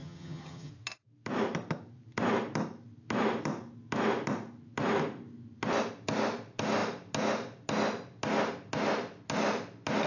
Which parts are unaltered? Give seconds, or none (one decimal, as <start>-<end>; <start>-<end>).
0.7-10.1